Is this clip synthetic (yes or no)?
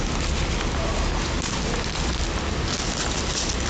no